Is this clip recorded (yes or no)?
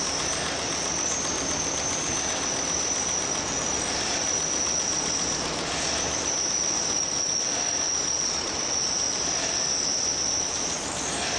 yes